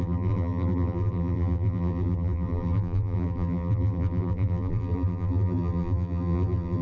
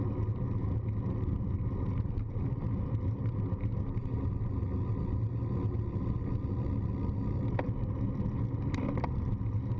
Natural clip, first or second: second